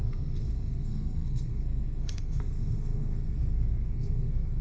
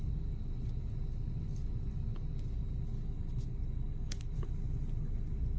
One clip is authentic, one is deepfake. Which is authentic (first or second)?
second